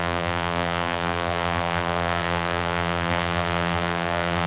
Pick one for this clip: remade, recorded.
remade